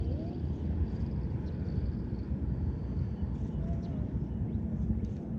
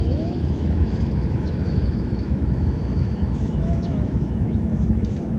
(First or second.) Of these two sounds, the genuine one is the first